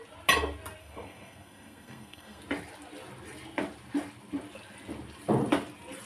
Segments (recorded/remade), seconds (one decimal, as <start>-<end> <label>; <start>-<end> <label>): 0.0-0.8 recorded; 0.8-2.4 remade; 2.4-6.1 recorded